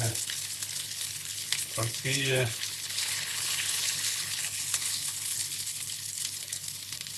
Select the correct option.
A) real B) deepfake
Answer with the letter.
B